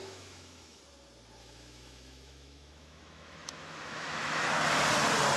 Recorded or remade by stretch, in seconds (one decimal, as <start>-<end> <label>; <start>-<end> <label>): 0.0-0.8 remade; 0.8-1.4 recorded; 1.4-4.6 remade; 4.6-5.4 recorded